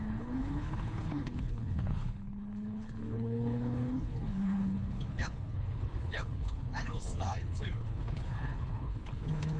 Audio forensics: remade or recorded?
remade